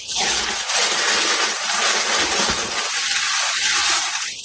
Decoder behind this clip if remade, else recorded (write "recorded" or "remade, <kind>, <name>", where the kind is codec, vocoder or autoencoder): recorded